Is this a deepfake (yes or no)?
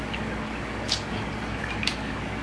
yes